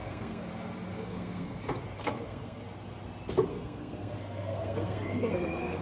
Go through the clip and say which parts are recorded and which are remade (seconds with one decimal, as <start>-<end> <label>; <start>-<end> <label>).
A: 0.0-0.5 remade; 0.5-0.9 recorded; 0.9-1.6 remade; 1.6-2.0 recorded; 2.0-2.6 remade; 2.6-3.5 recorded; 3.5-5.8 remade